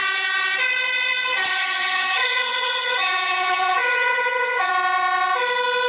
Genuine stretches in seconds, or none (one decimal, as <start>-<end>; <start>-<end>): 0.0-1.5; 4.7-5.9